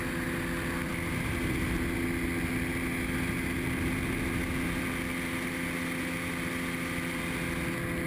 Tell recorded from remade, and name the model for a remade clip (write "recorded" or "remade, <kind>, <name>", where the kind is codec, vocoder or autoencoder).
recorded